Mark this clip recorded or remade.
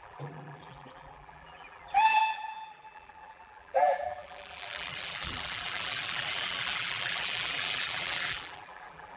remade